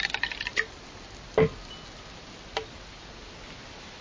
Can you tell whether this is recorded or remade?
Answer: recorded